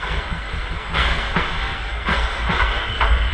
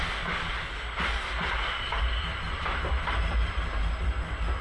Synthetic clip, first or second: first